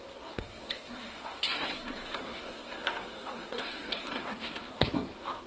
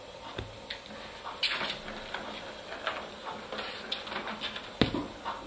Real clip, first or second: second